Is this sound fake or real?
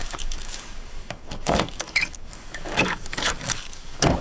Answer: fake